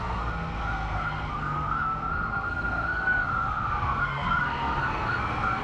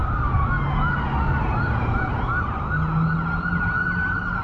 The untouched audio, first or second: second